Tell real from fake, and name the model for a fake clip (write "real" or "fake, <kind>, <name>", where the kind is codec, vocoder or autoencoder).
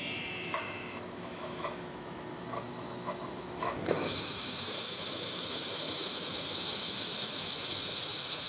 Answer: fake, autoencoder, DAC-VAE